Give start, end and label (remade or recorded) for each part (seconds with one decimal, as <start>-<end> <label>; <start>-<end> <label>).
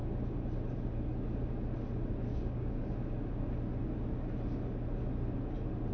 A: 0.0-2.3 recorded; 2.3-2.8 remade; 2.8-5.9 recorded